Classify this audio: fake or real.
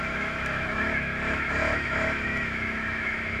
fake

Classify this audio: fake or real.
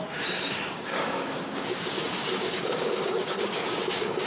fake